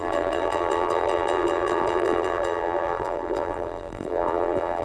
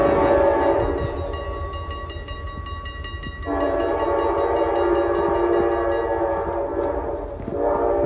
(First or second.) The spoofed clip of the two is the first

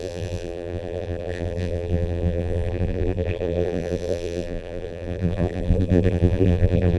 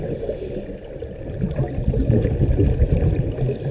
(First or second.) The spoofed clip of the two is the first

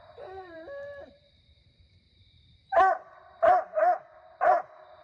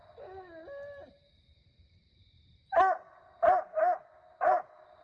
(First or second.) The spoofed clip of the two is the first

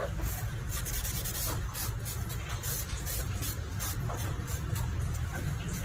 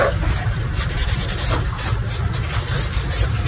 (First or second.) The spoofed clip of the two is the second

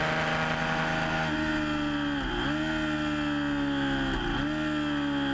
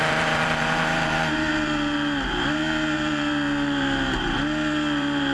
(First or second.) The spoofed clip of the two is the second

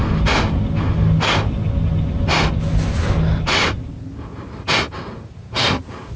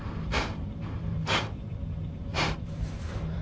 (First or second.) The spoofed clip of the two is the second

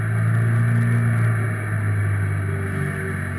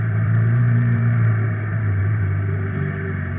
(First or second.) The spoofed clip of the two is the second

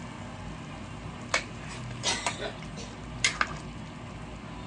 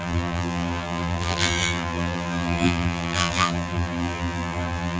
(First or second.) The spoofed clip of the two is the second